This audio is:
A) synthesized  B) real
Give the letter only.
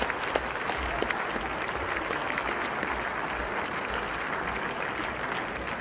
B